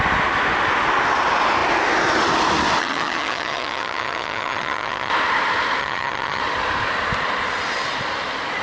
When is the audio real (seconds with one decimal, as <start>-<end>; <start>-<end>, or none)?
0.0-2.8; 5.1-5.8; 6.4-8.6